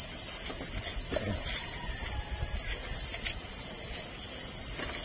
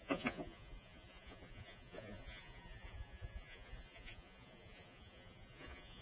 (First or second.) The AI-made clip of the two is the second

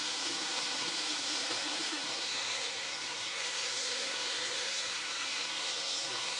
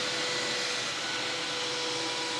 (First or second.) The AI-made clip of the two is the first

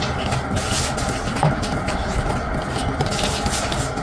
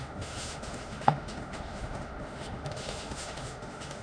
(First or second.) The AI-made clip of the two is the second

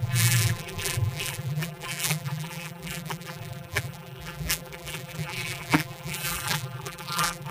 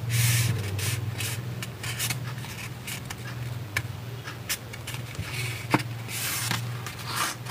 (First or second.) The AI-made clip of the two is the first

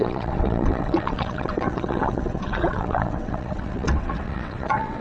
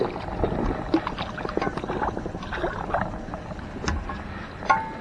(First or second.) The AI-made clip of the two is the first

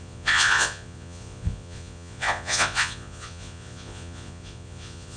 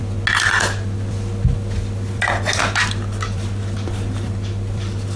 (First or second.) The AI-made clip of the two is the first